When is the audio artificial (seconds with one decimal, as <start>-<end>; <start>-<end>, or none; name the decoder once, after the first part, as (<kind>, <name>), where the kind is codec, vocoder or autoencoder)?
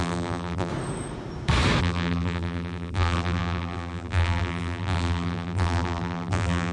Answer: 0.0-0.7 (vocoder, BigVGAN v2); 1.8-6.7